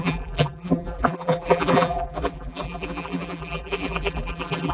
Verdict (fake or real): fake